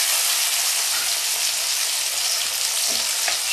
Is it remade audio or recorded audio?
recorded